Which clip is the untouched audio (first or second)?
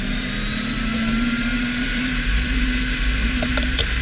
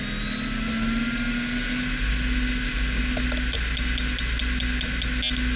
second